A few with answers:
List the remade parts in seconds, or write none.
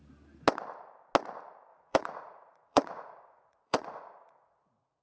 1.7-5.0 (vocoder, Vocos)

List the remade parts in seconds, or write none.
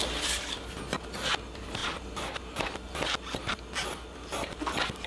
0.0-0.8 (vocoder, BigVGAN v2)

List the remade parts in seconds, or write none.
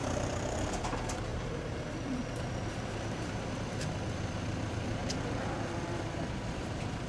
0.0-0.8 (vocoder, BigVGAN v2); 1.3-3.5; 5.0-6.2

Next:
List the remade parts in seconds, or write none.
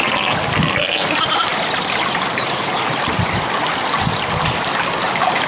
none